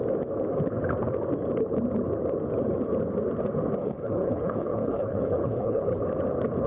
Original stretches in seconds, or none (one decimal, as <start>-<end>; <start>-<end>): 0.0-3.8; 6.0-6.7